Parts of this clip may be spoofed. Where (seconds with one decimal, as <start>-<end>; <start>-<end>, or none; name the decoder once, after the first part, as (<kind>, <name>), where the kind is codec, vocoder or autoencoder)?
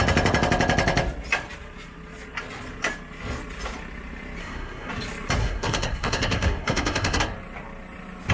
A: 4.4-4.9 (codec, SNAC); 5.4-7.2